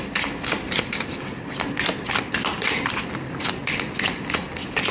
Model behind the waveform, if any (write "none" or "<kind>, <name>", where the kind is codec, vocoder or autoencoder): none